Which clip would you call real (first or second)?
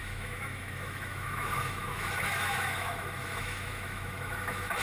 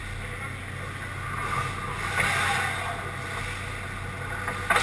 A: second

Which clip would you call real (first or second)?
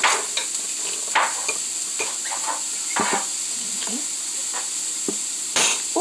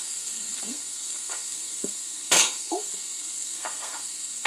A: first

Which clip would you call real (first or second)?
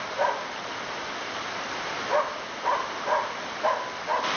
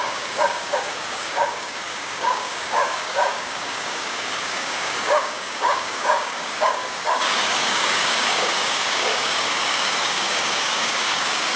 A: first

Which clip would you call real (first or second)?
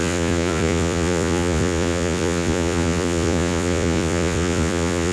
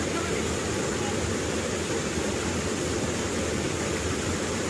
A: second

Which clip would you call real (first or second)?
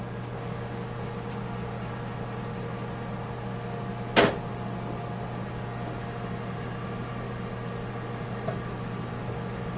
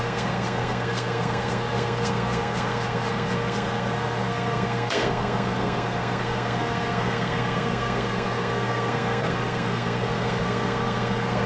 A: first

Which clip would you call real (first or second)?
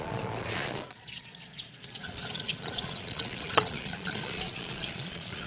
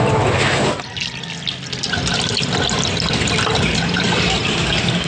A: second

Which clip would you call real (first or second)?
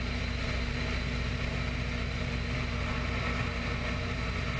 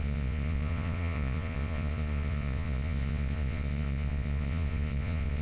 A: first